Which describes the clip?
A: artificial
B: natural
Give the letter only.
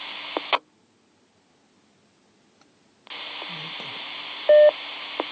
B